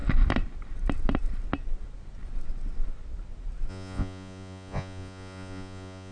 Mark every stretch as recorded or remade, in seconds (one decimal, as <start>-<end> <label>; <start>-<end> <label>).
0.0-3.7 recorded; 3.7-6.1 remade